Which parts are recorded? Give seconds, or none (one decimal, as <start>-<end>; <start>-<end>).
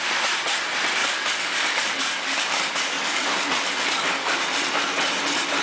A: 0.0-1.0; 4.4-5.6